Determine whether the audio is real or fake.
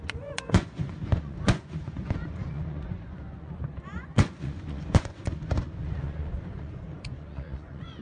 fake